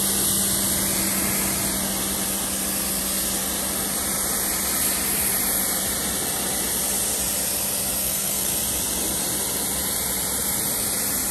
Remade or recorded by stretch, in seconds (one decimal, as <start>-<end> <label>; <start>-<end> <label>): 0.0-8.0 recorded; 8.0-8.5 remade; 8.5-11.3 recorded